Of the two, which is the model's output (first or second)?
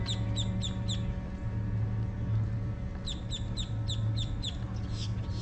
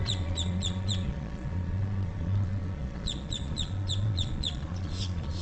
second